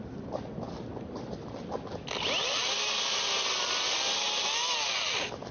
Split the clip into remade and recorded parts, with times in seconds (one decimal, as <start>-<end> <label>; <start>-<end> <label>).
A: 0.0-5.5 recorded